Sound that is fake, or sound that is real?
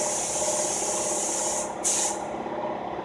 real